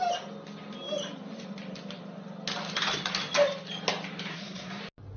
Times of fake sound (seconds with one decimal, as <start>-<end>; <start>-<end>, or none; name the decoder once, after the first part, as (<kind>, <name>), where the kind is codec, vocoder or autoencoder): 4.3-4.8 (codec, SNAC)